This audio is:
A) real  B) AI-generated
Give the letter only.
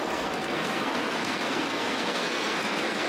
B